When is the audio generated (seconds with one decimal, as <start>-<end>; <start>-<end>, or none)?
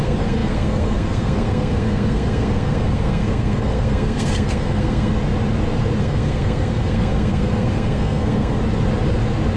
0.0-5.1; 6.0-8.6